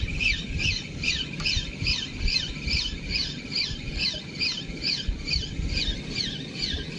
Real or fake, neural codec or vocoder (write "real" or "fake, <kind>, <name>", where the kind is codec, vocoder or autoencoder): real